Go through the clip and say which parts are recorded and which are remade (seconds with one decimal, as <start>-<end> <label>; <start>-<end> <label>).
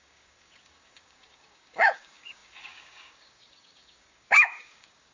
0.0-5.1 remade